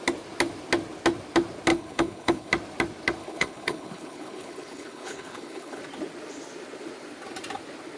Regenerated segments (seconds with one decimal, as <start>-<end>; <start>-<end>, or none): 1.7-2.5; 3.2-5.8